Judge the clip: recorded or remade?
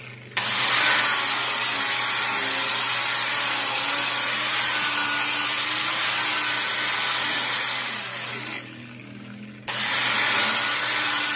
recorded